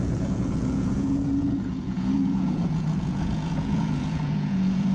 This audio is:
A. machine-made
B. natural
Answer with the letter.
A